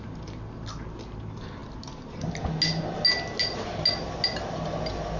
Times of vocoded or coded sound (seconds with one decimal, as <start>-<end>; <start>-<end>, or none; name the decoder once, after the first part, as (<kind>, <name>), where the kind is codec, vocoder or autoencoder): none